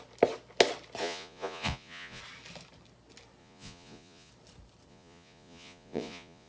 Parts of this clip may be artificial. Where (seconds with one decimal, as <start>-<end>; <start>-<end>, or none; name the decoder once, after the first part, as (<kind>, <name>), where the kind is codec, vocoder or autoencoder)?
1.0-2.2 (vocoder, Vocos); 3.4-4.3; 4.9-6.5